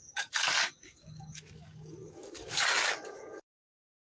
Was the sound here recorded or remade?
remade